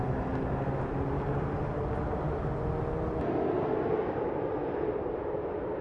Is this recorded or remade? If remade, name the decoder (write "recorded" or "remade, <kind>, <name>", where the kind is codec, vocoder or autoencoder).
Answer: recorded